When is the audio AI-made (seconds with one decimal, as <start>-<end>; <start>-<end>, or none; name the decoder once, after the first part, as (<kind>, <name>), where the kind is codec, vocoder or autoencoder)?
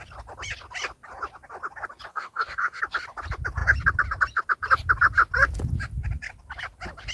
2.1-2.8 (codec, DAC)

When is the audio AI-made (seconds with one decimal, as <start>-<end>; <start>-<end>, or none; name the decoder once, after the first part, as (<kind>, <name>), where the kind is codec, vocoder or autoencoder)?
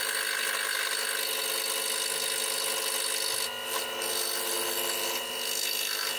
none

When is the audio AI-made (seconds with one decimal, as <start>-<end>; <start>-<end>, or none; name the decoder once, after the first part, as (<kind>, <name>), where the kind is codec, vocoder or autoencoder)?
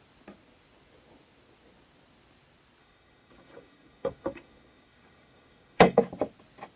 2.8-6.0 (codec, DAC)